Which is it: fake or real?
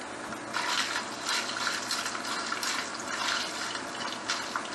real